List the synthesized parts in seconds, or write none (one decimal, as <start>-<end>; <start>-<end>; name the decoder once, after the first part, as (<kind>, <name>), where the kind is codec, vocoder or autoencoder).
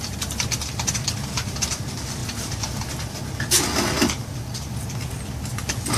none